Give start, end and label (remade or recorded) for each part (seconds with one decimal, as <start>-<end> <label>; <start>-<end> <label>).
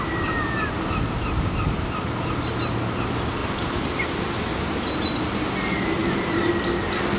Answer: 0.0-3.4 recorded; 3.4-4.1 remade; 4.1-6.0 recorded; 6.0-6.5 remade; 6.5-7.2 recorded